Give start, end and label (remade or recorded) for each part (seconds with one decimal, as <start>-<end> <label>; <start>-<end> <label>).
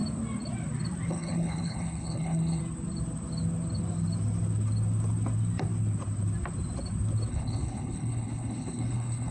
0.0-1.1 recorded; 1.1-2.6 remade; 2.6-7.3 recorded; 7.3-9.3 remade